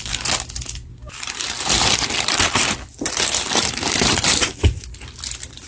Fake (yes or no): no